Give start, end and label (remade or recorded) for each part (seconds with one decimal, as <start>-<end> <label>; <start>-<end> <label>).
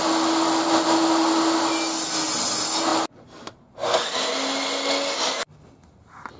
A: 0.0-6.4 recorded